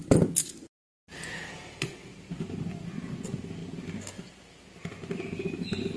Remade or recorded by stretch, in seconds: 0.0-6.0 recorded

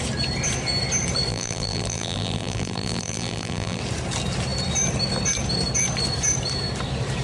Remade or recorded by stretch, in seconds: 0.0-1.3 recorded; 1.3-3.8 remade; 3.8-7.2 recorded

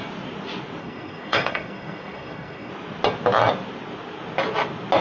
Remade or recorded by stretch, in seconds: 0.0-0.8 recorded; 0.8-2.7 remade; 2.7-5.0 recorded

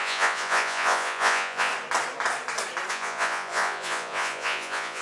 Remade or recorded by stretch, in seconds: 0.0-1.7 remade; 1.7-2.9 recorded; 2.9-5.0 remade

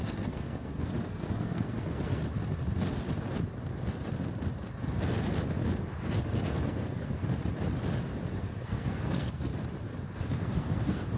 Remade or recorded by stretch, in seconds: 0.0-2.2 remade; 2.2-6.2 recorded; 6.2-7.2 remade; 7.2-8.4 recorded; 8.4-9.5 remade; 9.5-10.2 recorded; 10.2-11.2 remade

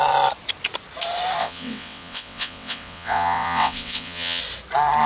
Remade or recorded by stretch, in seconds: 0.0-1.4 recorded; 1.4-4.4 remade; 4.4-5.1 recorded

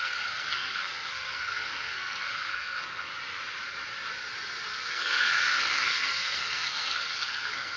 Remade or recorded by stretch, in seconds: 0.0-3.1 remade; 3.1-4.8 recorded; 4.8-7.8 remade